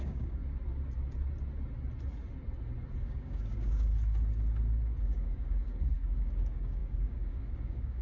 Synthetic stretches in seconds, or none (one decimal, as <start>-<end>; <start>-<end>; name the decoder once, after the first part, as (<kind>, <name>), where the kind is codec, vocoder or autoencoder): 0.0-0.4 (codec, DAC); 3.0-3.9; 5.0-8.0